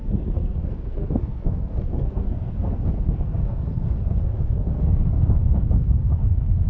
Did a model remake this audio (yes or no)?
yes